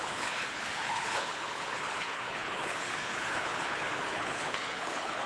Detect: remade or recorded remade